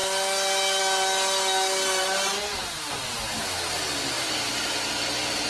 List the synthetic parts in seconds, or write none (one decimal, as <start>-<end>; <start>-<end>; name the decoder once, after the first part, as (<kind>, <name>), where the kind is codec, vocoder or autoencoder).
none